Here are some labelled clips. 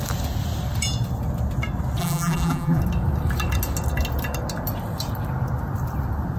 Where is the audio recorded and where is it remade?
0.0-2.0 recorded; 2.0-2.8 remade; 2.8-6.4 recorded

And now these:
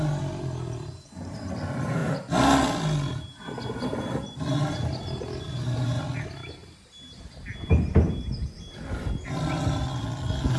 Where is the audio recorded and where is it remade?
0.0-10.6 recorded

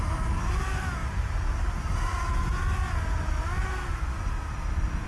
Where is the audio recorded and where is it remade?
0.0-5.1 recorded

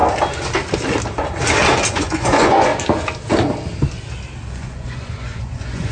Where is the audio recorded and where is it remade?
0.0-1.9 recorded; 1.9-2.7 remade; 2.7-4.5 recorded; 4.5-5.9 remade